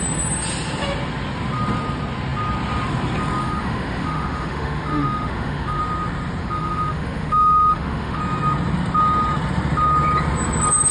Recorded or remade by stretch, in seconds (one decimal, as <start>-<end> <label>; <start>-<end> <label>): 0.0-3.4 recorded; 3.4-5.8 remade; 5.8-6.4 recorded; 6.4-8.2 remade; 8.2-10.9 recorded